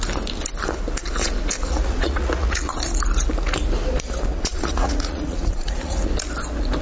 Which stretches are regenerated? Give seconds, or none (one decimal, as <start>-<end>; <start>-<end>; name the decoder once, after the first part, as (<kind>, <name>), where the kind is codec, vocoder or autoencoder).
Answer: 1.6-2.8 (vocoder, Vocos); 4.3-6.1